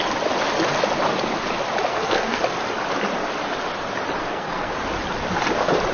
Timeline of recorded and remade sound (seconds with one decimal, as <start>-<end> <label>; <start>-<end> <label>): 0.0-1.9 recorded; 1.9-2.4 remade; 2.4-4.2 recorded; 4.2-4.7 remade; 4.7-5.9 recorded